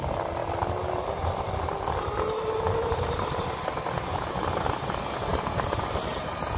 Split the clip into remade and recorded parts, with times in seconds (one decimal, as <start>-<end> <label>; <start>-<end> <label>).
0.0-2.8 recorded; 2.8-3.6 remade; 3.6-5.3 recorded; 5.3-6.6 remade

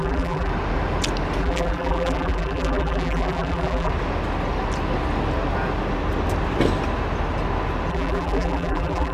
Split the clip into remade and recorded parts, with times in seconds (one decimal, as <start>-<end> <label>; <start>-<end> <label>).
0.0-0.5 remade; 0.5-1.4 recorded; 1.4-3.9 remade; 3.9-7.9 recorded; 7.9-9.1 remade

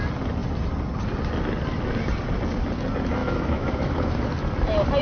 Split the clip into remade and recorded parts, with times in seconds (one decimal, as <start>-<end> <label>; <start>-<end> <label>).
0.0-3.2 recorded; 3.2-4.2 remade; 4.2-5.0 recorded

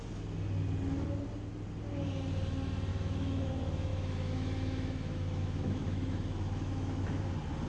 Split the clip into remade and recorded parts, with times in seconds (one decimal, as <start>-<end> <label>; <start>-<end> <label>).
0.0-2.9 recorded; 2.9-3.5 remade; 3.5-3.9 recorded; 3.9-7.3 remade; 7.3-7.7 recorded

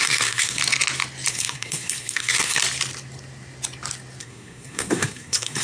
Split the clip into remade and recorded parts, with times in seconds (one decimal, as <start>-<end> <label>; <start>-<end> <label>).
0.0-0.6 remade; 0.6-1.3 recorded; 1.3-2.6 remade; 2.6-4.2 recorded; 4.2-5.6 remade